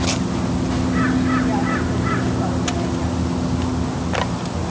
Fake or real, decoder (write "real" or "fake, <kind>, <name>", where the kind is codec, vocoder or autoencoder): real